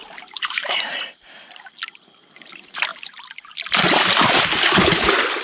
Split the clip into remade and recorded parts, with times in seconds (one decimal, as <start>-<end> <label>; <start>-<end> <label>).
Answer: 0.0-2.9 remade; 2.9-4.9 recorded; 4.9-5.4 remade